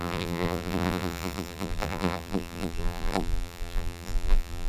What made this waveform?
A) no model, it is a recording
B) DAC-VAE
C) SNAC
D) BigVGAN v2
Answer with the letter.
D